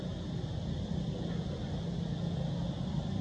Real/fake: real